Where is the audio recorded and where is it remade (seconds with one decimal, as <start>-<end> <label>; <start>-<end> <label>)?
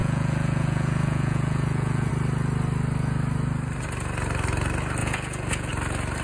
0.0-2.1 remade; 2.1-5.0 recorded; 5.0-5.7 remade; 5.7-6.2 recorded